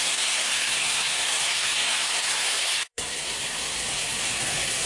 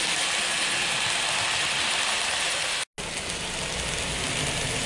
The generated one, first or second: first